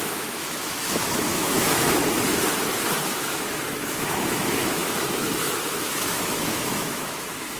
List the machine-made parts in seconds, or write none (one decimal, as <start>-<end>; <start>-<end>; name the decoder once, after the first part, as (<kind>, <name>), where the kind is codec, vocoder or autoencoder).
0.0-2.0 (autoencoder, DAC-VAE); 2.6-7.6